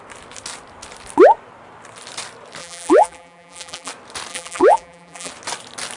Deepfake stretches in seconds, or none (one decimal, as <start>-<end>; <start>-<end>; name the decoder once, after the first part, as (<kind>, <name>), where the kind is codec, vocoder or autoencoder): 2.6-3.9 (vocoder, BigVGAN v2); 4.3-5.3